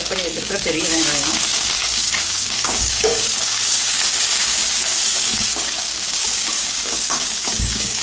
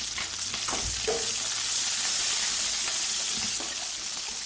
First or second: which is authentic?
second